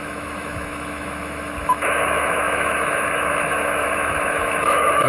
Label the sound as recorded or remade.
remade